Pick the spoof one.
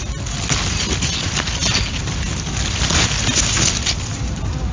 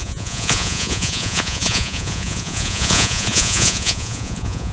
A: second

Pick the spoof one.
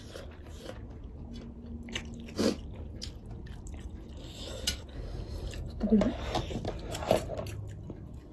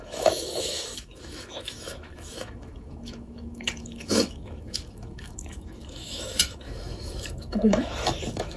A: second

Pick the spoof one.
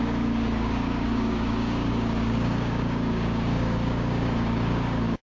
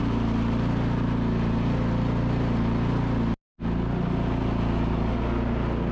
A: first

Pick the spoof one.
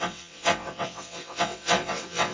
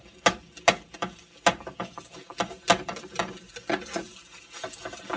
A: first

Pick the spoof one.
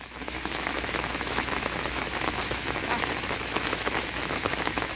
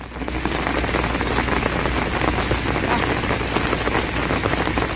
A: first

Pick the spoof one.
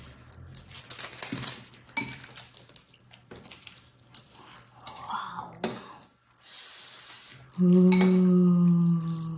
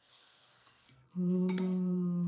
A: second